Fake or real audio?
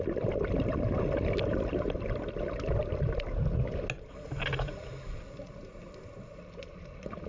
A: real